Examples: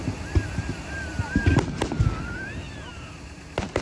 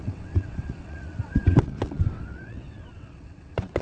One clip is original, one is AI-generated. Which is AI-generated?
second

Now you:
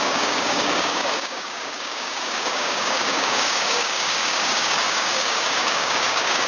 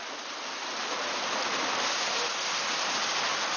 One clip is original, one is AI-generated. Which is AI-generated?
first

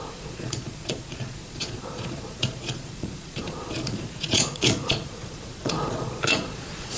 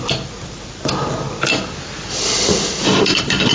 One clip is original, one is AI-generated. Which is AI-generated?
first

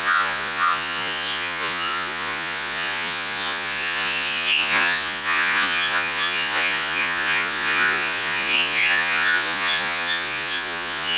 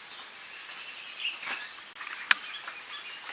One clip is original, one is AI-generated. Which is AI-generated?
first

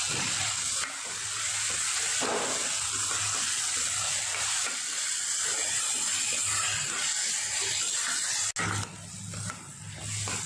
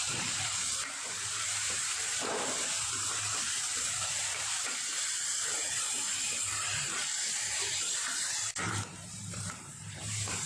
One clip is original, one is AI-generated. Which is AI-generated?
second